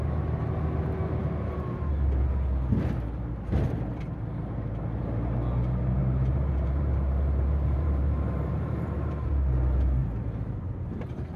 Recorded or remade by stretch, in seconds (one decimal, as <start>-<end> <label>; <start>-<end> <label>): 0.0-1.2 recorded; 1.2-1.8 remade; 1.8-6.0 recorded; 6.0-9.3 remade; 9.3-10.0 recorded; 10.0-11.4 remade